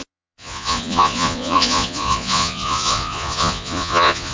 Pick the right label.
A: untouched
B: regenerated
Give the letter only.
B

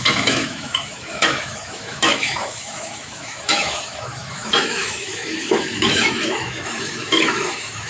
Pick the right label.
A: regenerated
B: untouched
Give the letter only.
A